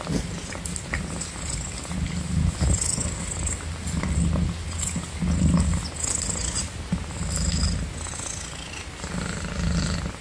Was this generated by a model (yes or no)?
no